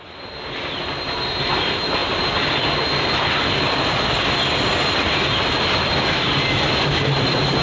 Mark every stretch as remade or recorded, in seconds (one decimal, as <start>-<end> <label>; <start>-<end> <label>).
0.0-7.6 recorded